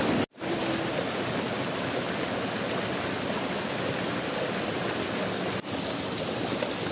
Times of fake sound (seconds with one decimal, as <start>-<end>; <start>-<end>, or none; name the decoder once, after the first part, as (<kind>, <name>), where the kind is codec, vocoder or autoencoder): none